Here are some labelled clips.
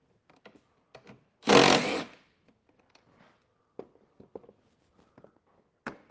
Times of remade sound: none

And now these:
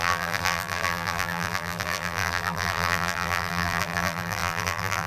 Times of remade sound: 0.0-5.1 (vocoder, BigVGAN v2)